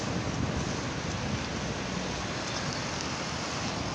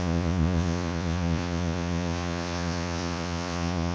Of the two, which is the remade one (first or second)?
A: second